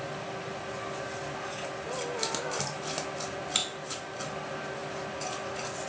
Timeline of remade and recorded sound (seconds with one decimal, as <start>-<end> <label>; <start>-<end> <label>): 0.0-3.6 recorded; 3.6-4.2 remade; 4.2-5.9 recorded